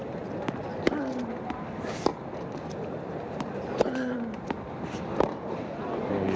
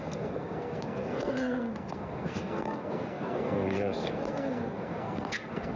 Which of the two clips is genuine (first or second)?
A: first